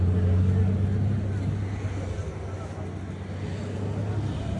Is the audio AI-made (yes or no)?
no